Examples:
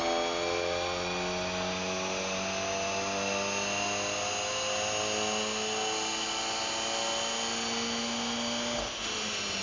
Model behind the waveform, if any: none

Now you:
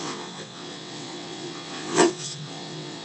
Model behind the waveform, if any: vocoder, WaveNeXt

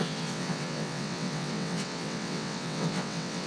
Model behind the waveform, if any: vocoder, WaveNeXt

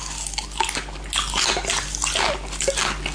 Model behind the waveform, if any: none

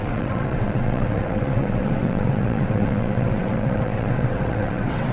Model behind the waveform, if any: vocoder, WaveNeXt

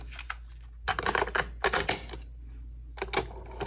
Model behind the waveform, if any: none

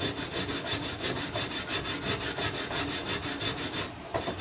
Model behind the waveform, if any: none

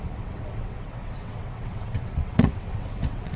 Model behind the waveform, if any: vocoder, WaveNeXt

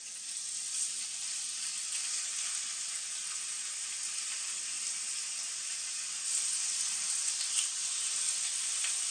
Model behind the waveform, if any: none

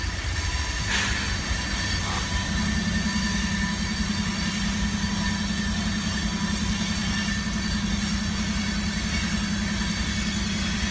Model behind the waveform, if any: none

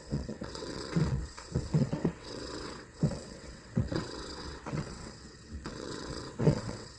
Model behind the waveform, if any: vocoder, WaveNeXt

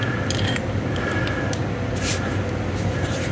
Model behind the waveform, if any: none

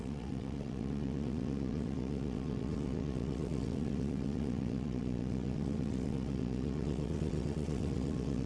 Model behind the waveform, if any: vocoder, WaveNeXt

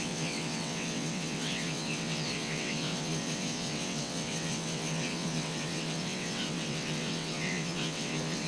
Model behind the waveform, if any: vocoder, WaveNeXt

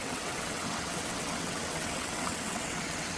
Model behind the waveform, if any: vocoder, WaveNeXt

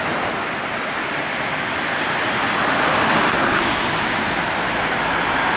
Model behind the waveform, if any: none